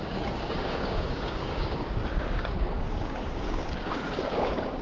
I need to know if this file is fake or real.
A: fake